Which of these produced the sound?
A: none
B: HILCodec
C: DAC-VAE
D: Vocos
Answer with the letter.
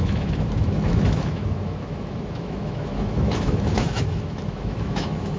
C